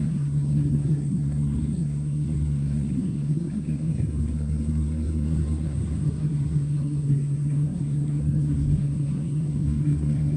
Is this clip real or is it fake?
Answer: fake